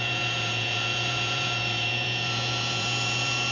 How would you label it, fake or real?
fake